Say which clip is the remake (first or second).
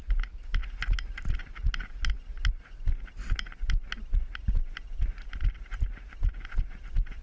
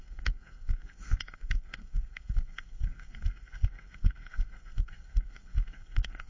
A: second